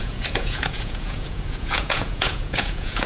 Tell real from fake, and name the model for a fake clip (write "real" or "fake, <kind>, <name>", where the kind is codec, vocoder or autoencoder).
fake, vocoder, Vocos